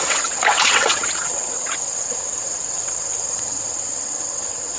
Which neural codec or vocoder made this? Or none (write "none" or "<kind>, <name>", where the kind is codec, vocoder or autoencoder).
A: vocoder, WaveNeXt